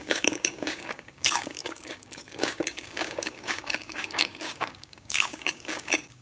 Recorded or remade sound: remade